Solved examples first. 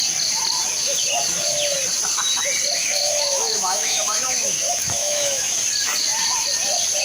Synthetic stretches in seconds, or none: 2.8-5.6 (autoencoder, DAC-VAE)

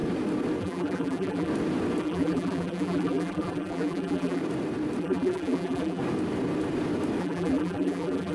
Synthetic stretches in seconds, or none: 0.6-1.5 (vocoder, BigVGAN v2); 2.0-4.4; 5.0-6.0; 7.2-8.3